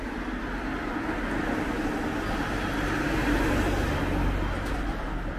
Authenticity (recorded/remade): recorded